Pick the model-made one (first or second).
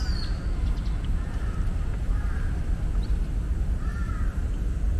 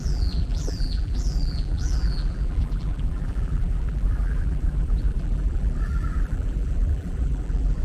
second